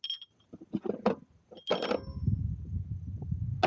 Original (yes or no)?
yes